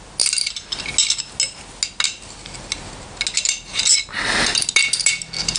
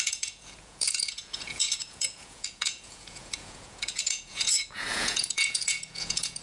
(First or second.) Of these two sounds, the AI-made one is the second